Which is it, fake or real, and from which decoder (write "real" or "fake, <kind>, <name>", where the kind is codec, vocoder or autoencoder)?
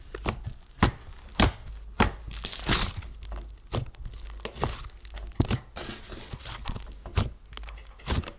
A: real